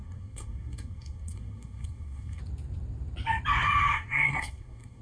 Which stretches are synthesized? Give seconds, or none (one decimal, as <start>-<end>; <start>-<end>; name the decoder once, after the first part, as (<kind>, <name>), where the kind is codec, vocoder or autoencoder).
0.0-2.4 (codec, SNAC); 3.9-5.0